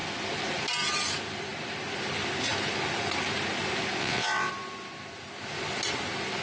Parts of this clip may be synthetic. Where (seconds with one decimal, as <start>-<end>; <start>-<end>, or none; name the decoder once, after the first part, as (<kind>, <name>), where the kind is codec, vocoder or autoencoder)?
4.0-4.5 (vocoder, WaveNeXt)

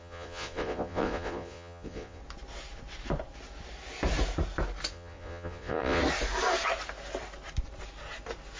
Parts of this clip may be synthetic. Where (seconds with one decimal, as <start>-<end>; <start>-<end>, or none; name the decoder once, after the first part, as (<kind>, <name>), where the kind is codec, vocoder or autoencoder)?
0.0-2.2 (vocoder, Vocos); 4.9-6.0

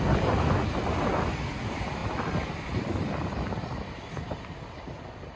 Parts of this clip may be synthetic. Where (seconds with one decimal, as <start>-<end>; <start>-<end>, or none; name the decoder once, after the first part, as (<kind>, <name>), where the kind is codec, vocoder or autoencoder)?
none

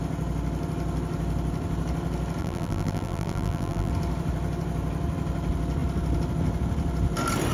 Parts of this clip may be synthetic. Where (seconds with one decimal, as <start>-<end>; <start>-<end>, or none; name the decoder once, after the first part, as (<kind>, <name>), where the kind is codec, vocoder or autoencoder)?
2.4-3.9 (vocoder, BigVGAN v2)

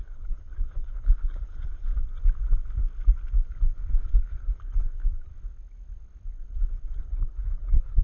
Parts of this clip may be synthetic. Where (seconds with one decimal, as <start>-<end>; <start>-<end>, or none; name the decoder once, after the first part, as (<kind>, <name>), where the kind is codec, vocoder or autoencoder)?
0.0-1.9 (codec, HILCodec); 4.1-5.3; 7.0-8.0

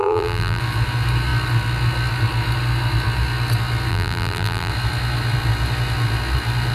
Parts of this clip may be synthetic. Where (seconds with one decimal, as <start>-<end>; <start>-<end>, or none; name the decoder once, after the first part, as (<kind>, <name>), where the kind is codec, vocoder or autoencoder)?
0.0-0.6 (vocoder, BigVGAN v2); 3.9-4.7

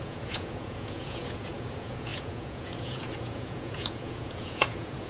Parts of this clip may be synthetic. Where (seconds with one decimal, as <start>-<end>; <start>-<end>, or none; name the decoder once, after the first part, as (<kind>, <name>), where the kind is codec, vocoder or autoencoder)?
0.0-5.1 (vocoder, Vocos)